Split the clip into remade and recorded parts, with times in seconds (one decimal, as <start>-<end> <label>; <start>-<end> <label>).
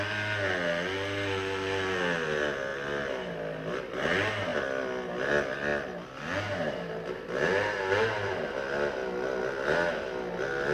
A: 0.0-2.7 recorded; 2.7-3.7 remade; 3.7-5.7 recorded; 5.7-9.4 remade; 9.4-10.7 recorded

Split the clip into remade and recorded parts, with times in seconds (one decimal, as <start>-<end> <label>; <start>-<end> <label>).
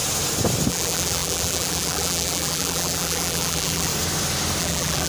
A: 0.0-0.7 recorded; 0.7-3.9 remade; 3.9-4.6 recorded; 4.6-5.1 remade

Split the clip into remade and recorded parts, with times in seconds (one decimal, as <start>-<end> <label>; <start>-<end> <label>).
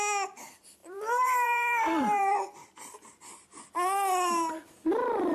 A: 0.0-0.8 recorded; 0.8-3.1 remade; 3.1-5.3 recorded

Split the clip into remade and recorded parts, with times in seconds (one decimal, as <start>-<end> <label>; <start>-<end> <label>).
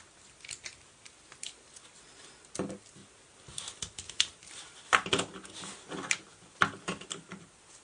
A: 0.0-7.8 recorded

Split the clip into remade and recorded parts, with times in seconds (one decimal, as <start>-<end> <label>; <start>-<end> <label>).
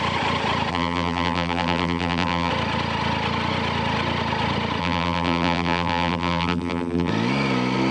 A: 0.0-0.7 recorded; 0.7-2.5 remade; 2.5-4.8 recorded; 4.8-7.1 remade; 7.1-7.9 recorded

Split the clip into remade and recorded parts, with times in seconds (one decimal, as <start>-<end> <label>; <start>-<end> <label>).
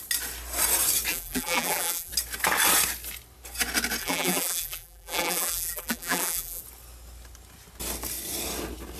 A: 0.0-1.1 recorded; 1.1-2.1 remade; 2.1-4.0 recorded; 4.0-6.6 remade; 6.6-9.0 recorded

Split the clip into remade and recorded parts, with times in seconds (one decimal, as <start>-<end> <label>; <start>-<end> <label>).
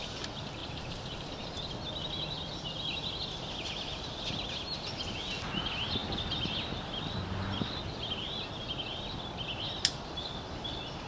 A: 0.0-0.6 recorded; 0.6-1.3 remade; 1.3-11.1 recorded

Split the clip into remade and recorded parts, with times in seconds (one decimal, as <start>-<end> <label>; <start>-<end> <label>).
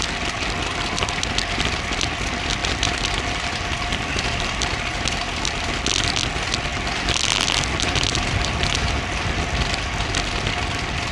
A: 0.0-2.6 recorded; 2.6-5.7 remade; 5.7-11.1 recorded